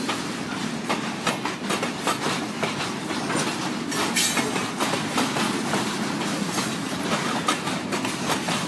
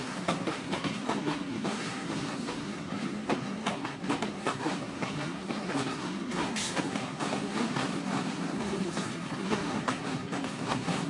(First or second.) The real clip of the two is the first